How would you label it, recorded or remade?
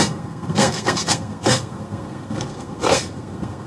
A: remade